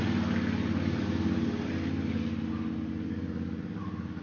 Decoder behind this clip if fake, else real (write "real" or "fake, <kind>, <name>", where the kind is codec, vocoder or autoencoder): real